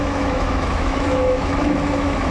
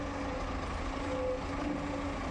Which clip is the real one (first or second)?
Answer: second